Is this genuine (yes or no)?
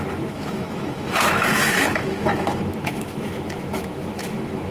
no